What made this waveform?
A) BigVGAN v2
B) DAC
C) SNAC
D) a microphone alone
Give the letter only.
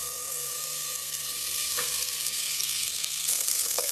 C